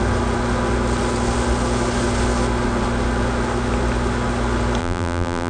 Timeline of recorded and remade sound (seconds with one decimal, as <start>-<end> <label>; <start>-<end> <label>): 0.0-4.8 recorded; 4.8-5.5 remade